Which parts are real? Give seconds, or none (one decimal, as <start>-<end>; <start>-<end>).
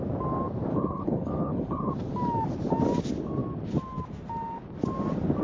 0.0-0.7; 1.9-5.4